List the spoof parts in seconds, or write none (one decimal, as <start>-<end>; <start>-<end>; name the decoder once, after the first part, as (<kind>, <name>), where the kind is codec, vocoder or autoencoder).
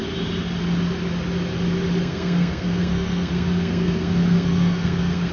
2.0-5.3 (codec, SNAC)